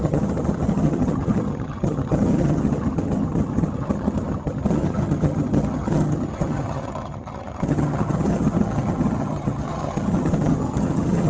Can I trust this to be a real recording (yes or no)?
no